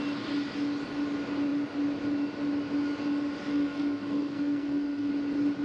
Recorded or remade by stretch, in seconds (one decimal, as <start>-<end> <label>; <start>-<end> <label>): 0.0-3.5 recorded; 3.5-5.1 remade; 5.1-5.6 recorded